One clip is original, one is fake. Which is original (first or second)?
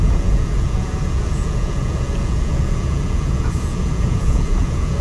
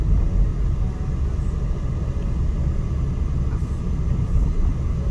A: second